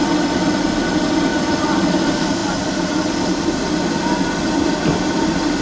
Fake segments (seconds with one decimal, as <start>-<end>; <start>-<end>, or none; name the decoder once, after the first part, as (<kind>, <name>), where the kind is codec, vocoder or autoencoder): 1.3-1.9 (vocoder, BigVGAN v2); 2.4-3.3